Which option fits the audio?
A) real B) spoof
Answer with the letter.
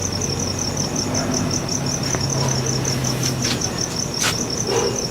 A